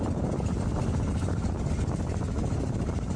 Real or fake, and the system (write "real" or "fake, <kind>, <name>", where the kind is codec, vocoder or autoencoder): real